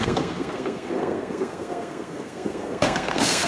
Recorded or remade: remade